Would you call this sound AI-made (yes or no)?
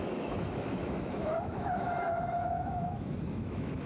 yes